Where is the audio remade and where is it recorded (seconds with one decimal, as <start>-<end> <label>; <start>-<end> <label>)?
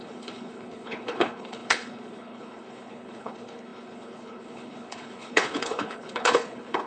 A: 0.0-6.9 remade